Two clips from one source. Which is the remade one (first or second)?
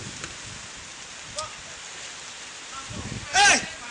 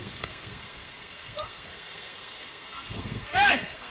second